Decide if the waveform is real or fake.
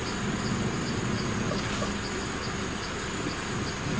real